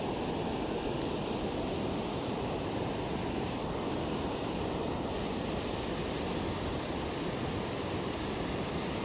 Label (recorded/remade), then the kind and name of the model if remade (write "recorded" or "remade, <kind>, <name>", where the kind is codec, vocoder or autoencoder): remade, vocoder, BigVGAN v2